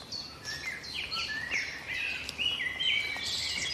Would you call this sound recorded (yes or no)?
yes